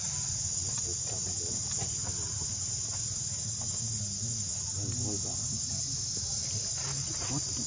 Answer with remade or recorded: recorded